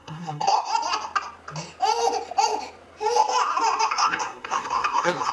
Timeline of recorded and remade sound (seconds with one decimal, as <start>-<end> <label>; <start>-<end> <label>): 0.0-0.7 remade; 0.7-3.9 recorded; 3.9-5.3 remade